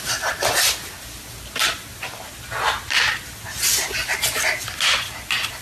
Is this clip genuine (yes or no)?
yes